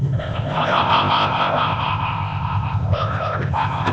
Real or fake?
fake